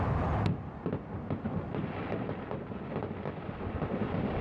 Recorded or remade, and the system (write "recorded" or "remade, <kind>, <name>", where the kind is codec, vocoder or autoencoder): recorded